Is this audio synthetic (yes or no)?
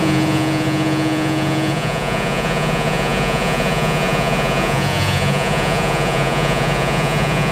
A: yes